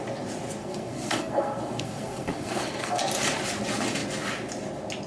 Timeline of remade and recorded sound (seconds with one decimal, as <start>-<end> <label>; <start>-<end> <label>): 0.0-0.6 recorded; 0.6-3.0 remade; 3.0-5.1 recorded